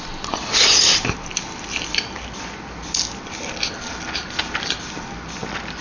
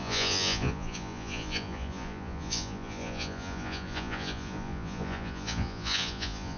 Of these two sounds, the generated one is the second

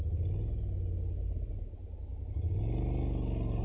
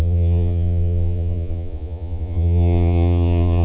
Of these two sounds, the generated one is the second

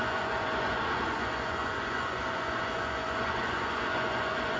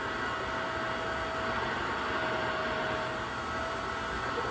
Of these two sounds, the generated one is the first